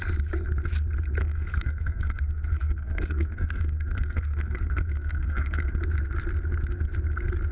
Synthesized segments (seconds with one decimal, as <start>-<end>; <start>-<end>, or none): 1.2-5.7

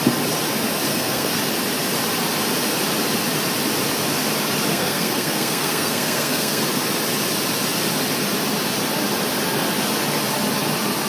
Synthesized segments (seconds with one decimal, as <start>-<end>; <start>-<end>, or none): 0.9-1.4; 4.7-6.6